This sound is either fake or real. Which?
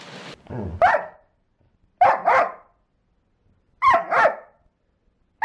real